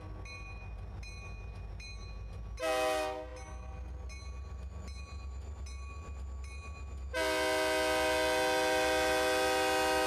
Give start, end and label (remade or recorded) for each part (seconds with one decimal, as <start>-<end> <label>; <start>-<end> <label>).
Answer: 0.0-10.1 recorded